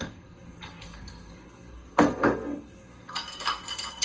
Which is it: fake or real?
fake